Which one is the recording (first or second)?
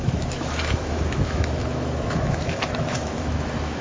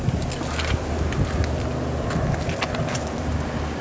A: second